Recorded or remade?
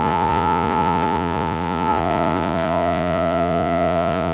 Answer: remade